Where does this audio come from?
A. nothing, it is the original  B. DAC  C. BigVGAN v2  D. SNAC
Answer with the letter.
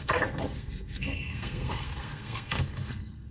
D